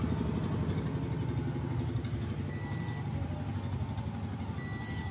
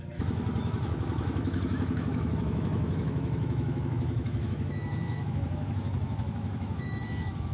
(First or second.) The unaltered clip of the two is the first